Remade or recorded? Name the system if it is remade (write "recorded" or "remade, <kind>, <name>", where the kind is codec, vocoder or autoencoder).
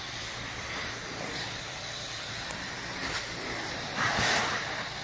remade, vocoder, BigVGAN v2